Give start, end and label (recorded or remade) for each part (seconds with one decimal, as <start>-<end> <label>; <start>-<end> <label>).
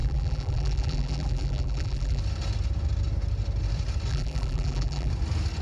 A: 0.0-2.2 remade; 2.2-4.1 recorded; 4.1-5.1 remade; 5.1-5.6 recorded